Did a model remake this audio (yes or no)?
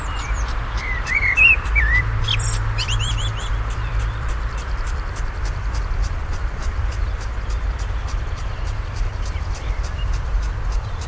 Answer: yes